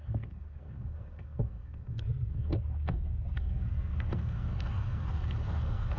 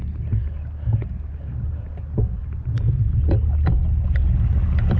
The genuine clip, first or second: second